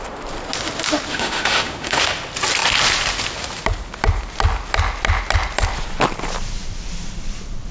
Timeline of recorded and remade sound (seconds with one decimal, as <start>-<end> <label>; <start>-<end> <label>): 0.0-1.1 recorded; 1.1-2.0 remade; 2.0-7.7 recorded